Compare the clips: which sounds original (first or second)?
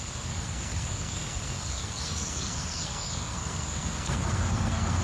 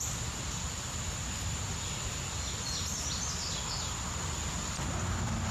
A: second